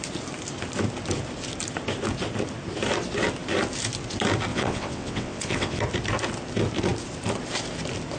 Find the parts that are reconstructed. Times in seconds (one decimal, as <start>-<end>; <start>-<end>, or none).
4.5-5.8